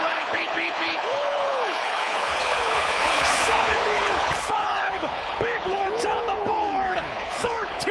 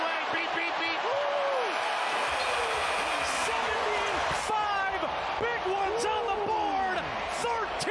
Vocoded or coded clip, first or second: first